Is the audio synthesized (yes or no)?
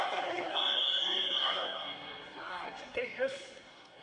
yes